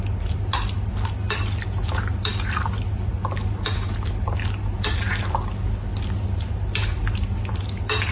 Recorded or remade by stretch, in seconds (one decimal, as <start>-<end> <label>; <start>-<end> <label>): 0.0-8.1 recorded